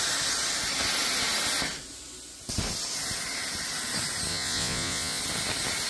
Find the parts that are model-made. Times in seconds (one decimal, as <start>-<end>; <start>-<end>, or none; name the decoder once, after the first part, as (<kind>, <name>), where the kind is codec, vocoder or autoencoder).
4.3-5.2 (vocoder, Vocos)